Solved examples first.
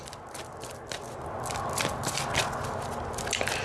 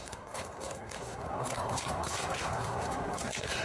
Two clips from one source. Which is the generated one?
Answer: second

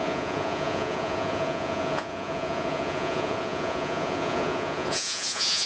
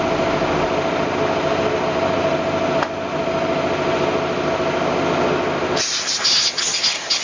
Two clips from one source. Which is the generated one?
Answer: first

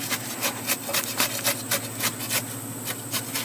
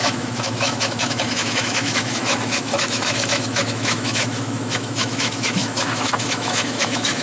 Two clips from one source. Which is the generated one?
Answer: second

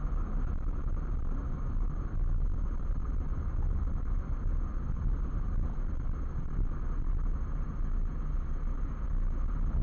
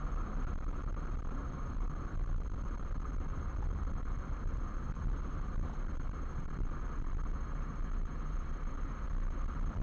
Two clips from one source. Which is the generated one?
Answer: second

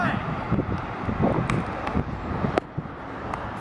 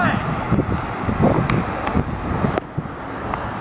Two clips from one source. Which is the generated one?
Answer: first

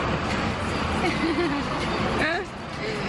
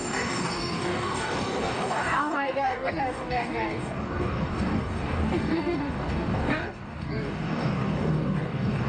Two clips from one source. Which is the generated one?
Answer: second